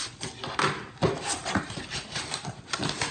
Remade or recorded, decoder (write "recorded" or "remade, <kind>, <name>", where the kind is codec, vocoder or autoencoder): recorded